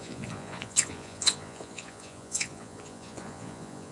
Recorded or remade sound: remade